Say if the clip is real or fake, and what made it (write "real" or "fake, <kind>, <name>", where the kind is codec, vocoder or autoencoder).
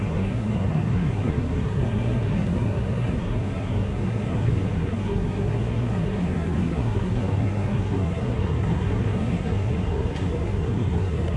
fake, codec, SNAC